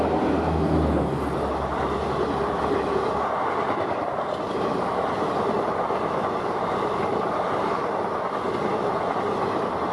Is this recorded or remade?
recorded